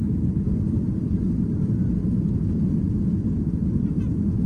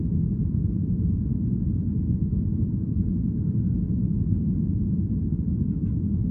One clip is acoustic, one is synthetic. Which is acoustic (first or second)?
first